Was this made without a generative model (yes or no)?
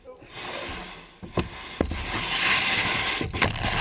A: yes